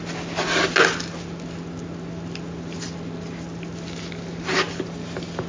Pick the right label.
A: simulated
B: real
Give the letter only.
B